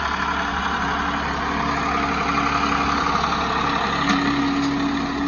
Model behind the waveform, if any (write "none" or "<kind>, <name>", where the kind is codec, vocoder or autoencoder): none